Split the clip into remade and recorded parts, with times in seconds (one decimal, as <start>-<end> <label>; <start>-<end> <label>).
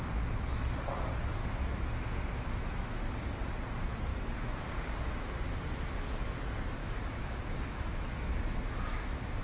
0.0-1.4 recorded; 1.4-3.1 remade; 3.1-4.1 recorded; 4.1-4.6 remade; 4.6-6.8 recorded; 6.8-9.4 remade